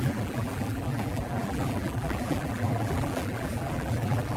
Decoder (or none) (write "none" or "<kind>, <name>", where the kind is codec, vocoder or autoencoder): vocoder, BigVGAN v2